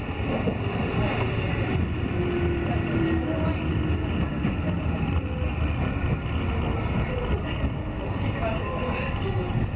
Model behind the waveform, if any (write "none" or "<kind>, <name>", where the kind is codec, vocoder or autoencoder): none